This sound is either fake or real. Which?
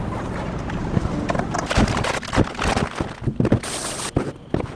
real